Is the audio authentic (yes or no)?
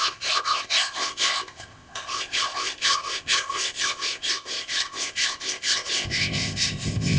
no